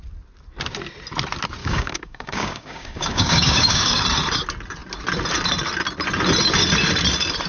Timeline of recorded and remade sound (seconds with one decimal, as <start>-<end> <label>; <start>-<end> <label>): 0.0-1.6 recorded; 1.6-4.0 remade; 4.0-7.5 recorded